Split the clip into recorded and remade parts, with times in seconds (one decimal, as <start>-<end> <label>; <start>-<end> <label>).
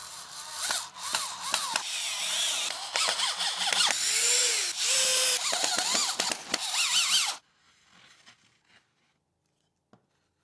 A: 0.0-10.4 recorded